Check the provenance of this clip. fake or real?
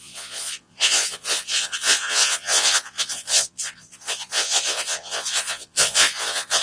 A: fake